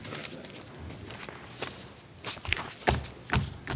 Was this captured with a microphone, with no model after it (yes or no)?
yes